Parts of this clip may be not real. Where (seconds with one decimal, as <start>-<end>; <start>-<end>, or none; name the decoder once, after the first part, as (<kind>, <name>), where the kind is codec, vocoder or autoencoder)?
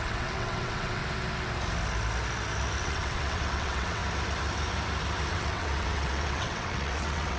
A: 0.0-1.0 (vocoder, WaveNeXt); 2.8-4.0; 5.3-7.4